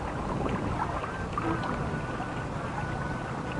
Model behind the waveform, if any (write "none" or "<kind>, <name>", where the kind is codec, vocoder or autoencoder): none